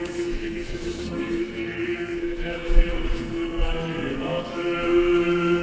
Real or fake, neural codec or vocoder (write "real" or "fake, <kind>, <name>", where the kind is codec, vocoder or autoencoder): fake, codec, SNAC